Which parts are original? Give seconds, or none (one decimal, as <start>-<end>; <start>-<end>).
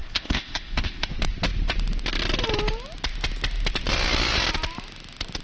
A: 1.1-5.4